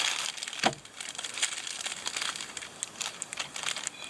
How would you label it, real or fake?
real